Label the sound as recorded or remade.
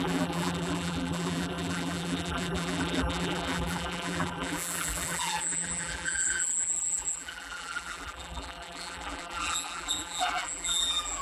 remade